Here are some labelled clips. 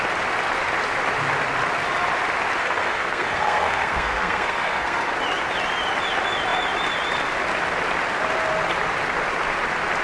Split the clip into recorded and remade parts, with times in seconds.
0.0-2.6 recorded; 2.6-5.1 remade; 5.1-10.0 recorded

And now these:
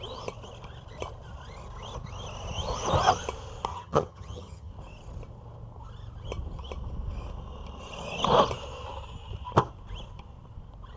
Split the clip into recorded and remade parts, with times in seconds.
0.0-3.7 recorded; 3.7-4.7 remade; 4.7-11.0 recorded

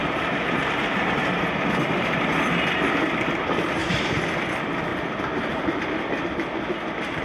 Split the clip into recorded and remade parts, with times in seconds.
0.0-1.4 remade; 1.4-3.8 recorded; 3.8-4.3 remade; 4.3-4.9 recorded; 4.9-6.0 remade; 6.0-7.2 recorded

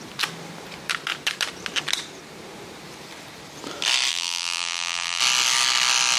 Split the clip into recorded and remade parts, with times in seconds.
0.0-4.1 recorded; 4.1-5.2 remade; 5.2-6.2 recorded

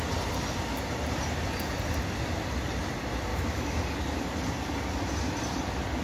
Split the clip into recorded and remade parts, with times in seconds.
0.0-3.3 recorded; 3.3-3.8 remade; 3.8-6.0 recorded

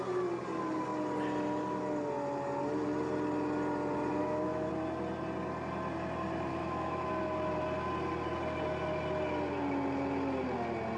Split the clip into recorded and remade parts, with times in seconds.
0.0-4.2 recorded; 4.2-4.7 remade; 4.7-6.5 recorded; 6.5-7.1 remade; 7.1-11.0 recorded